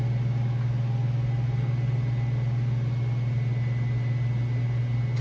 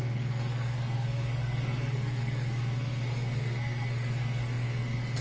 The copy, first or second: second